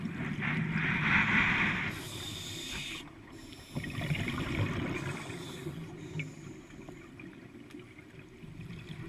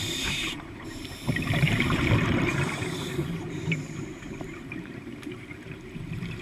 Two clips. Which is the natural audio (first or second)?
first